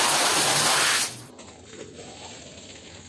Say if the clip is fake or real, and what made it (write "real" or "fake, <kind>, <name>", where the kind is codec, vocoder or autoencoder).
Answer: real